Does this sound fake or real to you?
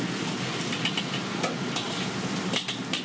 real